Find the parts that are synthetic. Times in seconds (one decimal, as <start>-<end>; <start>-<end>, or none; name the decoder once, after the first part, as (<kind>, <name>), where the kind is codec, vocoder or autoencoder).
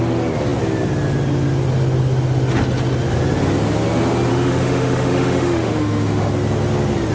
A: 4.3-6.3 (autoencoder, DAC-VAE)